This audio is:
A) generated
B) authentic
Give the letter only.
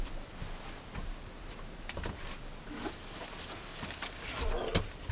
B